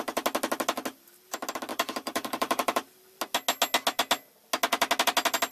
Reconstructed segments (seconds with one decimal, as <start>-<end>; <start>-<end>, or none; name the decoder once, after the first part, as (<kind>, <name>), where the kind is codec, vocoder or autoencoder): 1.7-2.9 (vocoder, BigVGAN v2)